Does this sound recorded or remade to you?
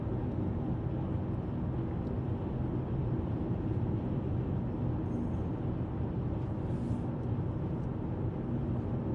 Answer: recorded